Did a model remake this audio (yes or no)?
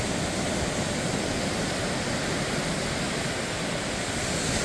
no